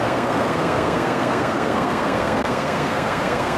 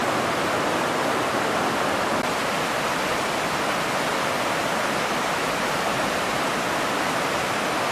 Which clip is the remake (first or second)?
first